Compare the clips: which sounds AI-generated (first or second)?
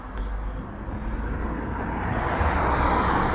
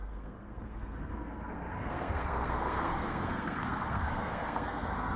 second